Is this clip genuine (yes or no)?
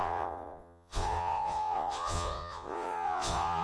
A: no